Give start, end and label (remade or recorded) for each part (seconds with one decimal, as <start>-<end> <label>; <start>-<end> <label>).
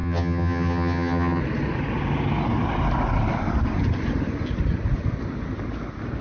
0.0-1.4 remade; 1.4-6.2 recorded